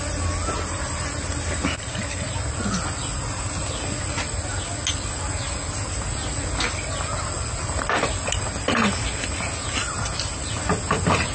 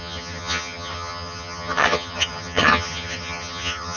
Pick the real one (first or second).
first